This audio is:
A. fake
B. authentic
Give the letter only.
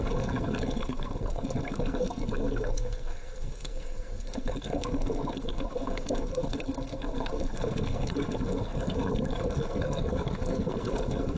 A